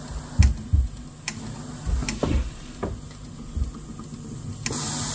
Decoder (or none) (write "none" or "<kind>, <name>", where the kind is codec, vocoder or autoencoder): none